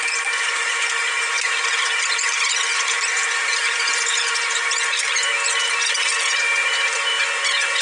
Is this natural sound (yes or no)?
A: no